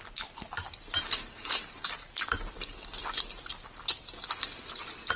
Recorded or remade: remade